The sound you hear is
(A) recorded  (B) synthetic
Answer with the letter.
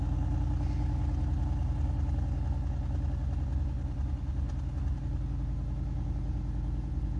A